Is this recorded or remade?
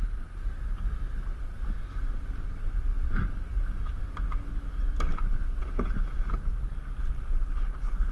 recorded